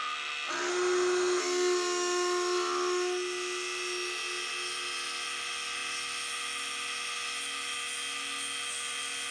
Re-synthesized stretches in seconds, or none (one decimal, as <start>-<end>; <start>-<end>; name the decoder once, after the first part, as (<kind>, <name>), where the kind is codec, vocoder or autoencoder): 0.7-1.4 (autoencoder, DAC-VAE)